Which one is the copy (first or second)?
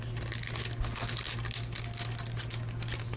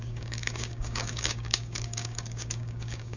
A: second